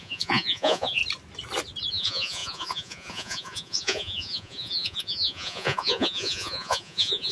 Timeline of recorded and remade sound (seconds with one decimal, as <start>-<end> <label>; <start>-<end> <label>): 0.0-1.0 remade; 1.0-1.9 recorded; 1.9-7.3 remade